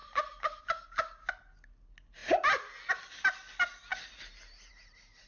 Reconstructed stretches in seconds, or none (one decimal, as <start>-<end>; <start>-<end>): 0.0-0.6